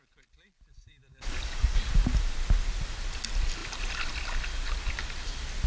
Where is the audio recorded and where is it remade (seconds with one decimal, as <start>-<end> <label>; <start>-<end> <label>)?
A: 0.0-1.1 recorded; 1.1-1.8 remade; 1.8-5.7 recorded